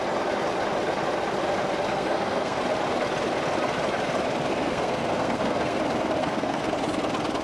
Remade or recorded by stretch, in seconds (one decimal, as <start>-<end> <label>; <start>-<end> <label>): 0.0-1.9 recorded; 1.9-2.6 remade; 2.6-4.5 recorded; 4.5-5.8 remade; 5.8-6.2 recorded; 6.2-6.7 remade; 6.7-7.4 recorded